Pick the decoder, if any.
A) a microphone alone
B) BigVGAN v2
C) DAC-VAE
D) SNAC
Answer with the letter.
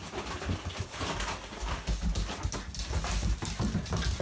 A